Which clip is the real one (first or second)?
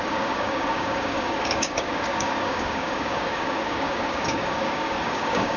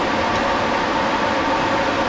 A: second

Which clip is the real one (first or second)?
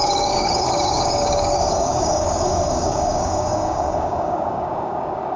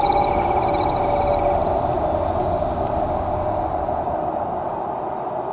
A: second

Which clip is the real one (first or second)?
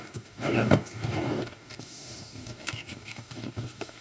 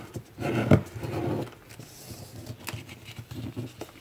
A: second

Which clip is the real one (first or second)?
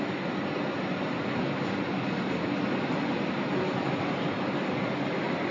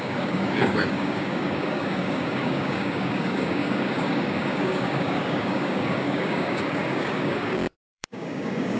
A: first